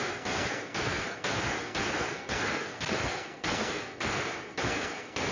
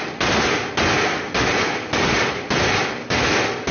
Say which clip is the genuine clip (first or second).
second